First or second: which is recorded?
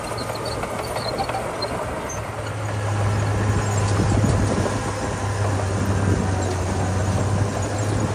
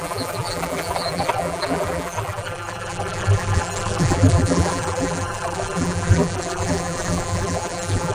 first